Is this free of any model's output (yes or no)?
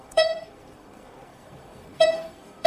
no